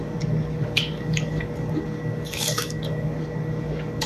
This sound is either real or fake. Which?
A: fake